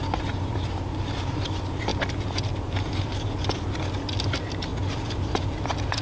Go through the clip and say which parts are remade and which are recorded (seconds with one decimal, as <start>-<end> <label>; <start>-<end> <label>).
0.0-6.0 recorded